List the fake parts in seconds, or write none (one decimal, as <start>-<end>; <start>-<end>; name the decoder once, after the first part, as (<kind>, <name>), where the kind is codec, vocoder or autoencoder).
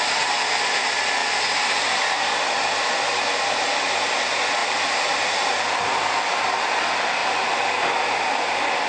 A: 4.6-6.4 (vocoder, BigVGAN v2); 7.2-7.7